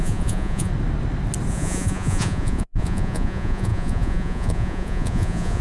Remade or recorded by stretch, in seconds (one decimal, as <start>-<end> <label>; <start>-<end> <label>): 0.0-0.7 remade; 0.7-1.5 recorded; 1.5-5.6 remade